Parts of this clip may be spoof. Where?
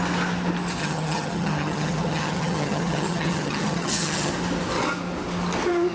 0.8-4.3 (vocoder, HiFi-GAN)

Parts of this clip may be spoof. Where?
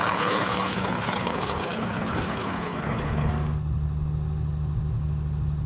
0.0-3.3 (codec, HILCodec)